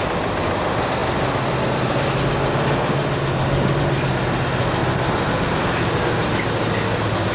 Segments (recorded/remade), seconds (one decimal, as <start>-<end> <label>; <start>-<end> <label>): 0.0-7.3 recorded